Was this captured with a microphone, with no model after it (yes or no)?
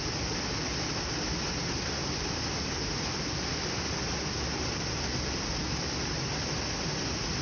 yes